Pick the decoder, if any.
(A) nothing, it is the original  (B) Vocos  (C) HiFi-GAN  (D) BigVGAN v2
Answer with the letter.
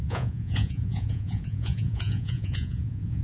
B